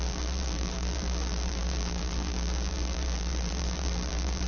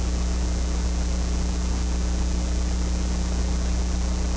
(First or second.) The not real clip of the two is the first